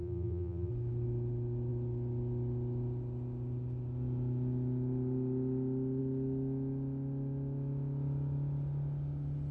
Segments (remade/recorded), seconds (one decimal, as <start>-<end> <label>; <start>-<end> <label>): 0.0-0.7 remade; 0.7-9.5 recorded